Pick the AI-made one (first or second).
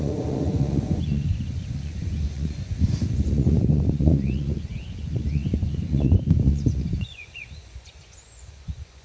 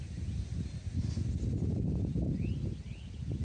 first